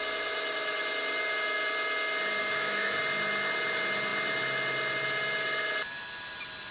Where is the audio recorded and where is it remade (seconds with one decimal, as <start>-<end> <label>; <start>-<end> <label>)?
0.0-2.4 recorded; 2.4-3.0 remade; 3.0-6.7 recorded